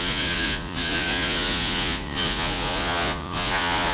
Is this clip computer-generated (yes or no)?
yes